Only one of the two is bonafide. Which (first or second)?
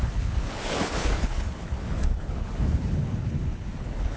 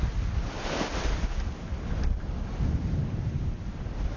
second